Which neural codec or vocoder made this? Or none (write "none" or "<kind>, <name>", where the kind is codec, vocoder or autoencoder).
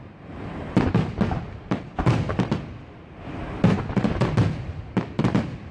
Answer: none